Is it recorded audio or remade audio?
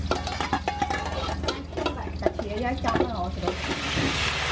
recorded